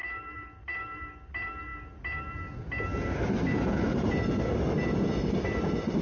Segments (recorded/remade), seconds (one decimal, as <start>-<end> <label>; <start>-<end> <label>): 0.0-6.0 recorded